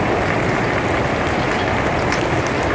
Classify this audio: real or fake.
real